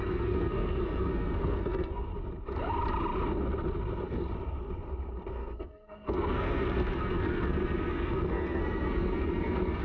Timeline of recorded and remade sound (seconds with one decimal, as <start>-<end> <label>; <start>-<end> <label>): 0.0-2.1 remade; 2.1-5.3 recorded; 5.3-9.8 remade